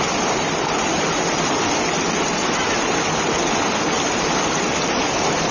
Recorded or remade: recorded